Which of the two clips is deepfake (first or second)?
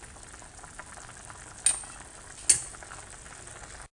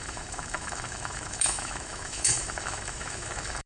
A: second